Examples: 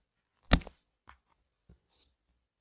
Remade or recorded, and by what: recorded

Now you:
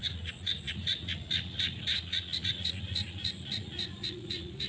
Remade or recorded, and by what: remade, vocoder, Vocos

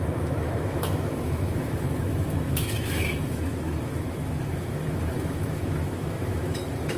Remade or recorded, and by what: remade, autoencoder, DAC-VAE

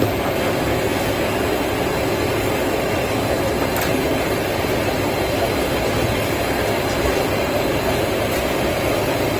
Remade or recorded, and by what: recorded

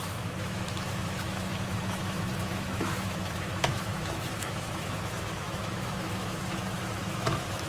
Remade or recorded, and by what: remade, autoencoder, DAC-VAE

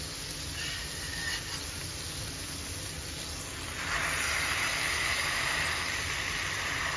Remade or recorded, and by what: recorded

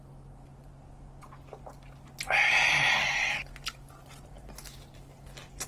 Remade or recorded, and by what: recorded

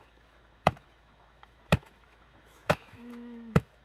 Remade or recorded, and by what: remade, autoencoder, DAC-VAE